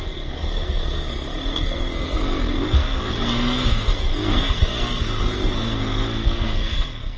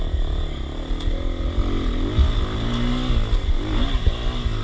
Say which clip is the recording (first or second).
second